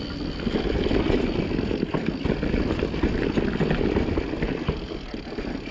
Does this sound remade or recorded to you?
recorded